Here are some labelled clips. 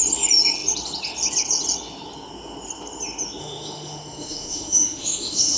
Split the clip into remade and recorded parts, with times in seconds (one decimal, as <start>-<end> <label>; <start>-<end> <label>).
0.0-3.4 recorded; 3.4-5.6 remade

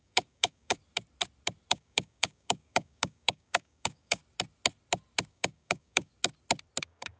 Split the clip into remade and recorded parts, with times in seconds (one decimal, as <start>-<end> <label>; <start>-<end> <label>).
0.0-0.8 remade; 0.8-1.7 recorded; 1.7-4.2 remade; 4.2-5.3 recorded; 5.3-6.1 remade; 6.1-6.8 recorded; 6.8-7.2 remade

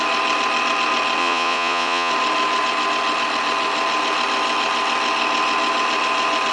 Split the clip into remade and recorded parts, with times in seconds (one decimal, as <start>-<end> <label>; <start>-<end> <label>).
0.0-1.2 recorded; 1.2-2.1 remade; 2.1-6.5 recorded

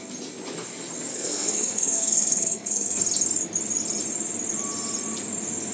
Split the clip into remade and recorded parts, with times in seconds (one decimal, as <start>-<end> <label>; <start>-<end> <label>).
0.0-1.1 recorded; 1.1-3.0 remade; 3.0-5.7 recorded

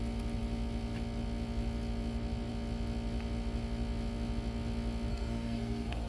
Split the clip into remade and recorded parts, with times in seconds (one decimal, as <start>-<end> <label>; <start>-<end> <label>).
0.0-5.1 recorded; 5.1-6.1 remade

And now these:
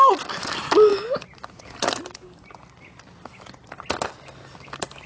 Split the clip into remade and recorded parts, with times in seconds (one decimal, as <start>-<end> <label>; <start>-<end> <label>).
0.0-5.1 recorded

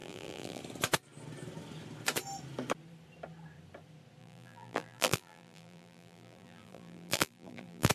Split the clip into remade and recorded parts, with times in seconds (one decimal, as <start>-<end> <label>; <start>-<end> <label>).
0.0-0.6 remade; 0.6-4.2 recorded; 4.2-7.9 remade

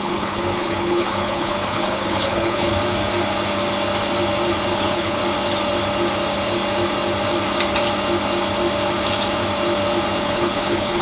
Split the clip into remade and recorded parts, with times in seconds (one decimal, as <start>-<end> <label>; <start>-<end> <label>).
0.0-2.7 remade; 2.7-4.7 recorded; 4.7-5.2 remade; 5.2-10.2 recorded; 10.2-11.0 remade